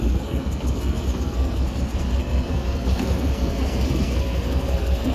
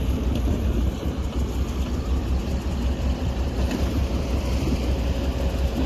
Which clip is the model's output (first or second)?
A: first